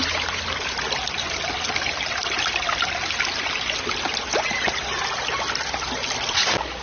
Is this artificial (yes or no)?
no